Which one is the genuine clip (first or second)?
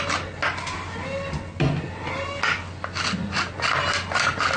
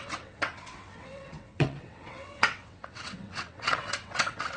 first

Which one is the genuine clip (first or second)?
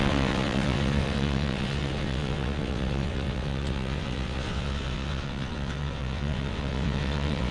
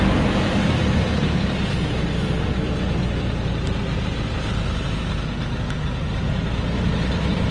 second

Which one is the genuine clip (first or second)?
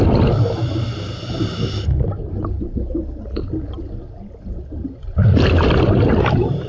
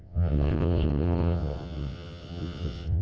first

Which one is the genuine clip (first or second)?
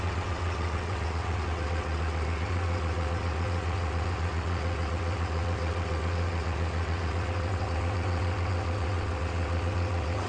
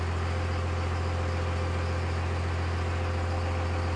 second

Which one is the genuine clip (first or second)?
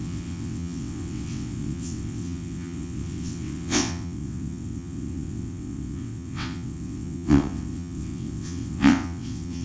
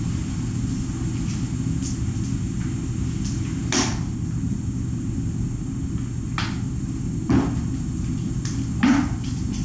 second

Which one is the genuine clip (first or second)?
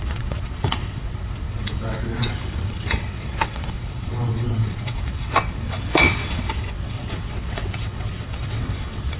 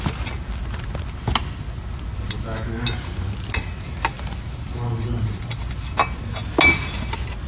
second